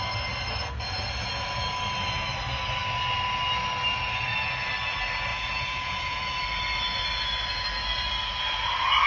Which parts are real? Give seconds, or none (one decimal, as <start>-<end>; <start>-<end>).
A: 0.0-5.3; 6.4-9.1